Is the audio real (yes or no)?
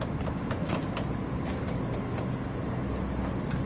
yes